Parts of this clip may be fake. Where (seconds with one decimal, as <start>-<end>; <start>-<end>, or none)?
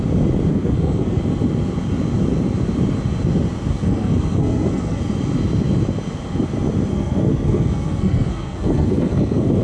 0.5-1.2; 3.7-5.0; 6.9-9.6